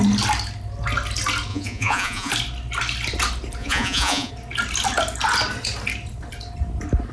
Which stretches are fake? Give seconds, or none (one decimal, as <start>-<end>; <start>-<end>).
1.5-2.3; 3.6-4.3

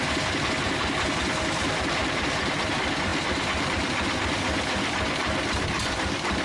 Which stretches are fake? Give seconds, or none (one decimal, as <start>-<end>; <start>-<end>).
none